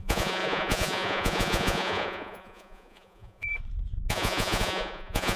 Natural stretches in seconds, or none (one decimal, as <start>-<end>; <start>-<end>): 3.5-4.1